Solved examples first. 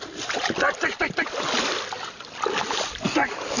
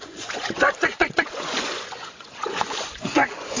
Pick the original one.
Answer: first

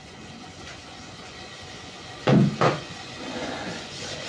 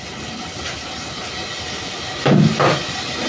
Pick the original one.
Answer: second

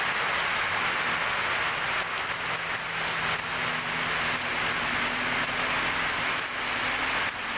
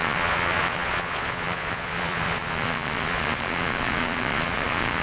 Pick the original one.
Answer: first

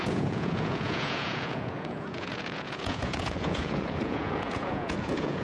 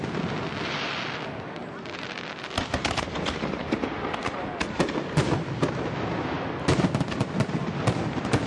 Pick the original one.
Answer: second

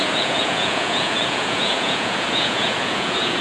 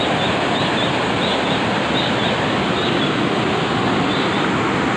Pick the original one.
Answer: second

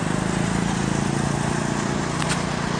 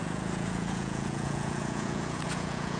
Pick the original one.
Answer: first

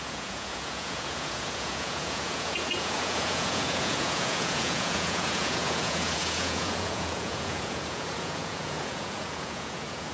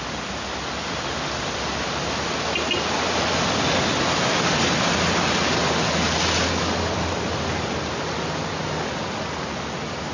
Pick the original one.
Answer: second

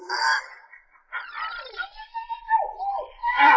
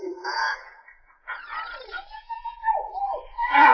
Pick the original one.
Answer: first